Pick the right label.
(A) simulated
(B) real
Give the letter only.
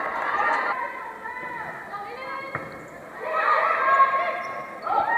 B